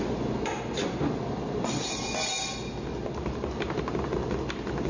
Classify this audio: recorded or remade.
recorded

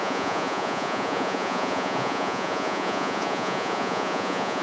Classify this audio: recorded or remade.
remade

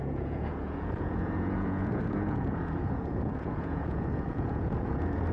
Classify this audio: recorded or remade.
remade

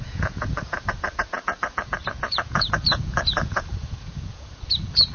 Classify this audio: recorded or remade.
remade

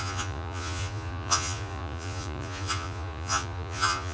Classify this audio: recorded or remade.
remade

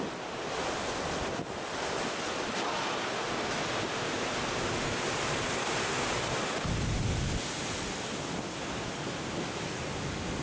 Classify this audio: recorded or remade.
recorded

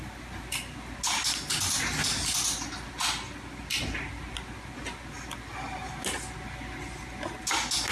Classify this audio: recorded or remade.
recorded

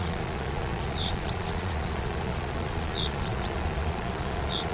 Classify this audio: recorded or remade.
remade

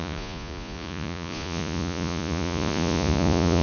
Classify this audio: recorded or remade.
remade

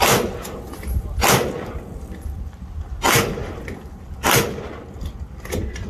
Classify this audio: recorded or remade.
recorded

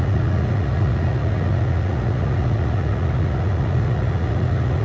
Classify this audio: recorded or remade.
remade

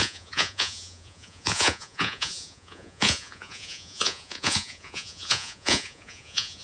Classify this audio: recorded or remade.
remade